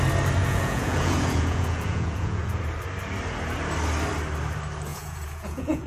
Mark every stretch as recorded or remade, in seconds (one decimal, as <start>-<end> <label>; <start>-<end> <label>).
0.0-0.4 recorded; 0.4-2.6 remade; 2.6-4.9 recorded; 4.9-5.9 remade